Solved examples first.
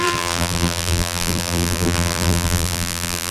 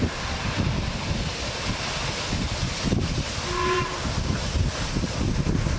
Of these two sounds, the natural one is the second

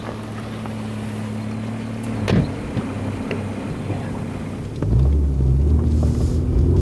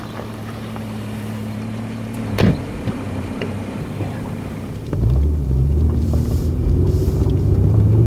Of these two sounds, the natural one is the first